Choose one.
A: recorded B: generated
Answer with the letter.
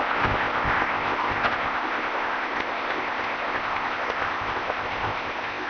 B